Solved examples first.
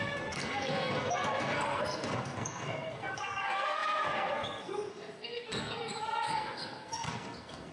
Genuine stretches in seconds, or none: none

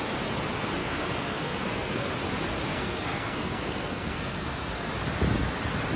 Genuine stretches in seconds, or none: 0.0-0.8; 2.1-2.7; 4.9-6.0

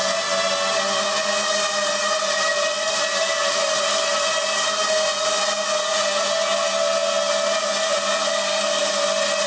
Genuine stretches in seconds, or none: 0.0-8.3; 8.9-9.5

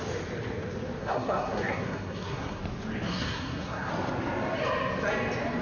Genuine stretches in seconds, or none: 0.0-1.0; 2.6-3.1; 3.9-5.6

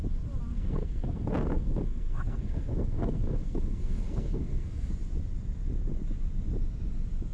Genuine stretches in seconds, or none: 0.0-0.5; 4.9-7.3

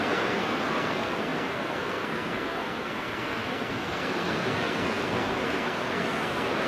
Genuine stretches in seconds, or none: none

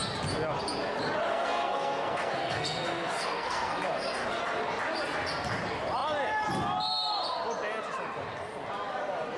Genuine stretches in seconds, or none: 0.0-1.3; 4.4-9.4

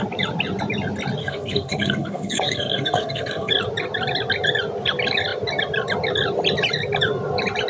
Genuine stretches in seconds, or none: 0.0-1.2; 3.5-7.7